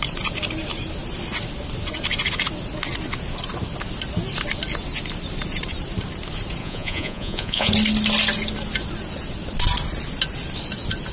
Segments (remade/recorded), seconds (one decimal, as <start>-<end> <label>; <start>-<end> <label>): 0.0-6.6 recorded; 6.6-7.7 remade; 7.7-11.1 recorded